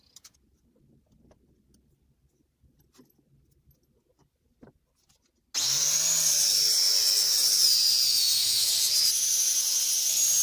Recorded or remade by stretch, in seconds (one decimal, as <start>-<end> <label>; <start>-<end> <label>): 0.0-8.1 recorded; 8.1-8.7 remade; 8.7-10.4 recorded